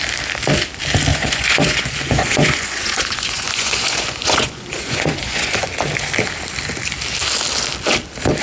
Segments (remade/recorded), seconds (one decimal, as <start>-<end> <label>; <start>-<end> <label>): 0.0-1.1 recorded; 1.1-5.7 remade; 5.7-8.4 recorded